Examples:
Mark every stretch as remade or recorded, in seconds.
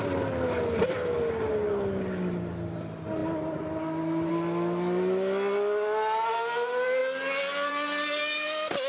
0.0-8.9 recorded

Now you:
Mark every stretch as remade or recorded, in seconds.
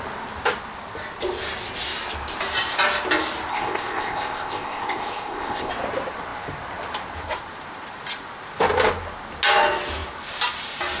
0.0-3.5 recorded; 3.5-5.7 remade; 5.7-11.0 recorded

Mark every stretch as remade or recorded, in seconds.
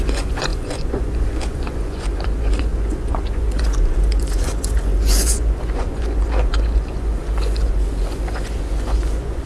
0.0-9.5 remade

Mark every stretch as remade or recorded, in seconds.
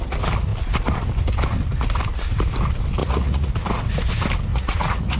0.0-3.0 recorded; 3.0-3.5 remade; 3.5-4.5 recorded; 4.5-5.2 remade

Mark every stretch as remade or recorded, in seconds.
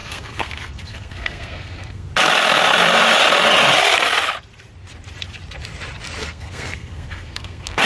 0.0-2.1 remade; 2.1-6.2 recorded; 6.2-7.9 remade